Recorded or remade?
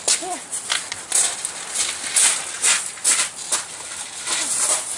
recorded